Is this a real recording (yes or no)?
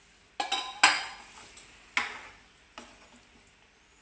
yes